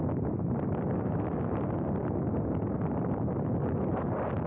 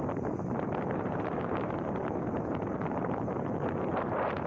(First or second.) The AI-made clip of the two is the second